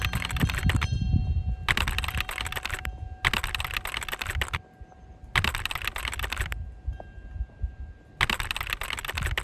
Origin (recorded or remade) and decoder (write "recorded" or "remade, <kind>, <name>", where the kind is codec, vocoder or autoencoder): recorded